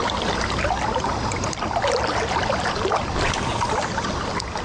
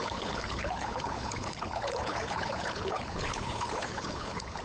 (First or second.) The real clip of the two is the first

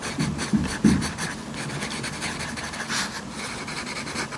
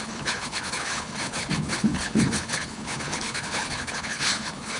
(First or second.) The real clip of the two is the first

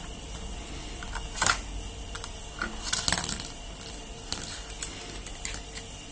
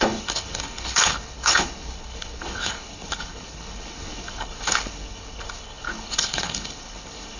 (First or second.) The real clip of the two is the first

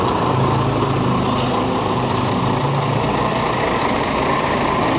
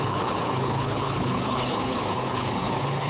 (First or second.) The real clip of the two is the first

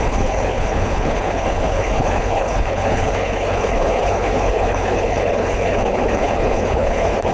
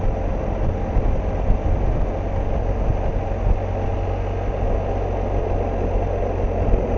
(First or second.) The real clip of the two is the second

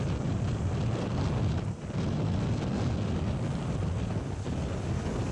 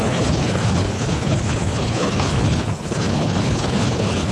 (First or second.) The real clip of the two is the first